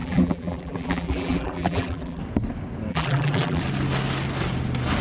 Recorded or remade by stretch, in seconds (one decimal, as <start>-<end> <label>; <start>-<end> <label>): 0.0-2.2 remade; 2.2-2.9 recorded; 2.9-3.6 remade; 3.6-5.0 recorded